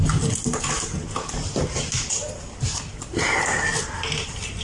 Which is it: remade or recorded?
recorded